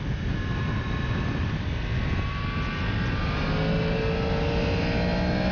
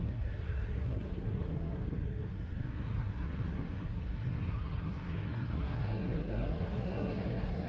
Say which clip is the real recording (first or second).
first